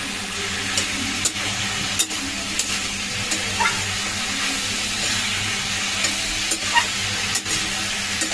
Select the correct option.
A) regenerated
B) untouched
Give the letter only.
B